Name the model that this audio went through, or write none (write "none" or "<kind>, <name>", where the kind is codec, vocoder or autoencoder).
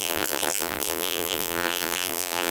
vocoder, BigVGAN v2